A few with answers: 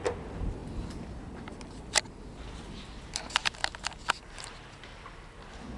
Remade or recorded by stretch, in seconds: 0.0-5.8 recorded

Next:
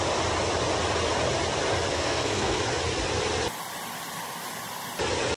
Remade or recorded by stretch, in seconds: 0.0-1.9 recorded; 1.9-2.6 remade; 2.6-5.4 recorded